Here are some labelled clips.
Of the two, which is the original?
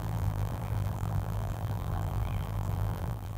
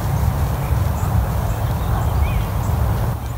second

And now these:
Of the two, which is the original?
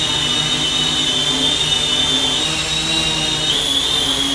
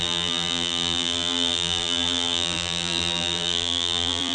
first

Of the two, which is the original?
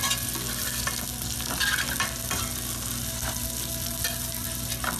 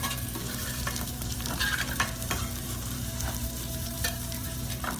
first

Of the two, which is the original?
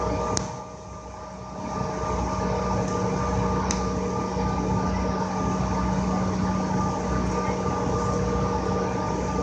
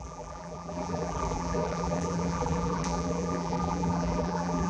first